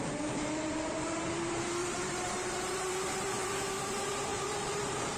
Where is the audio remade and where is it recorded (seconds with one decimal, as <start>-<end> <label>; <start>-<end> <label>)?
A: 0.0-1.8 recorded; 1.8-2.9 remade; 2.9-4.3 recorded; 4.3-5.2 remade